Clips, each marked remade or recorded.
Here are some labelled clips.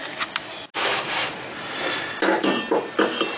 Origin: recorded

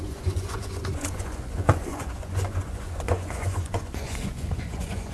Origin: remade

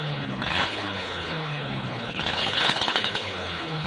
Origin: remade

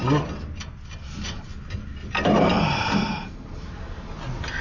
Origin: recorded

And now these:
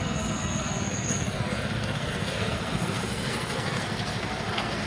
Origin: remade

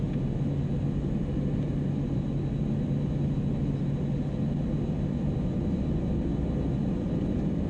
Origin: recorded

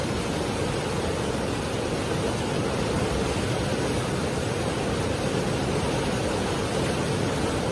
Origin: recorded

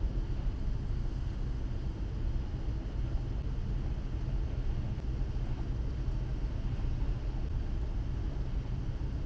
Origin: recorded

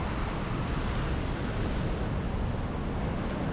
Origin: recorded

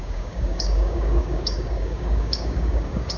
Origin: remade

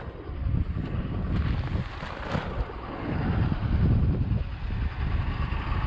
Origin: recorded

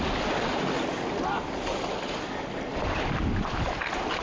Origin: recorded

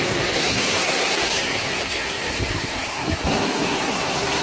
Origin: remade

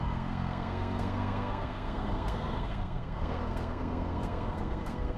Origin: remade